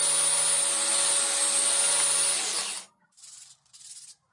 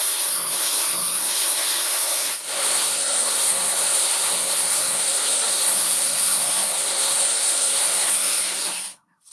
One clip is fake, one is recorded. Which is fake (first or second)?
second